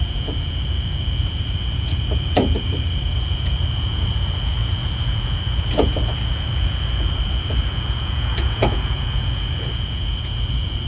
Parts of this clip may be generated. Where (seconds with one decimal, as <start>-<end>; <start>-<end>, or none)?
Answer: 0.0-10.9